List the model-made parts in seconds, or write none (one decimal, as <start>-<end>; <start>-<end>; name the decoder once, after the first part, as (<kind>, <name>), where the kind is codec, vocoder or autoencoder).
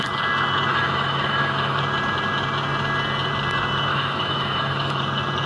0.7-1.8 (autoencoder, DAC-VAE); 3.9-5.0